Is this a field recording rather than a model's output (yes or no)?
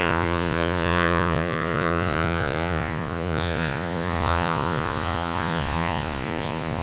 no